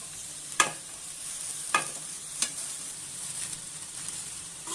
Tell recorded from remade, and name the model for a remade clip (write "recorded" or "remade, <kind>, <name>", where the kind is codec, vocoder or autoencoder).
remade, vocoder, BigVGAN v2